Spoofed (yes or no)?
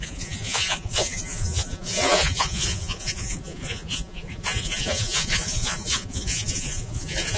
yes